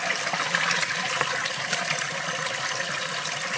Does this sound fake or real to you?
real